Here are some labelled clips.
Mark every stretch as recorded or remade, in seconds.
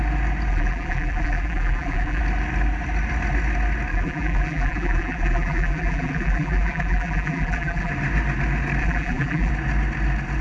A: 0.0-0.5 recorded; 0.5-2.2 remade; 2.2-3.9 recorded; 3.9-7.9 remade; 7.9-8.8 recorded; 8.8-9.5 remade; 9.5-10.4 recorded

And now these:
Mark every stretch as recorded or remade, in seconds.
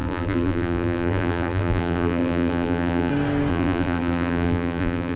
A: 0.0-3.1 remade; 3.1-3.5 recorded; 3.5-5.2 remade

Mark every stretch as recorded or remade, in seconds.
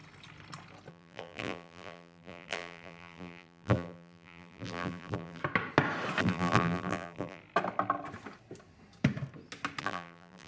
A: 0.0-0.9 recorded; 0.9-5.4 remade; 5.4-6.2 recorded; 6.2-7.4 remade; 7.4-9.8 recorded; 9.8-10.5 remade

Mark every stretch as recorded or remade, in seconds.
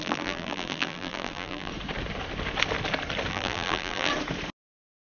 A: 0.0-1.7 remade; 1.7-3.3 recorded; 3.3-4.1 remade; 4.1-5.0 recorded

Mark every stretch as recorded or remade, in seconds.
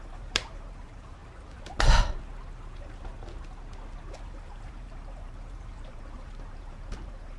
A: 0.0-1.2 remade; 1.2-4.1 recorded; 4.1-7.4 remade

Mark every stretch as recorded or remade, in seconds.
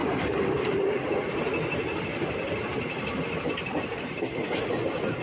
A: 0.0-0.8 remade; 0.8-5.2 recorded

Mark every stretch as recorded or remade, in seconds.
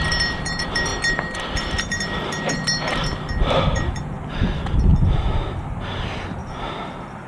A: 0.0-6.4 remade; 6.4-7.3 recorded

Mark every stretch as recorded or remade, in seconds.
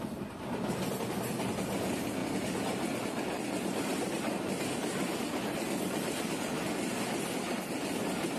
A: 0.0-8.4 recorded